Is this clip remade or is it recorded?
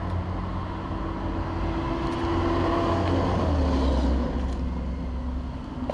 recorded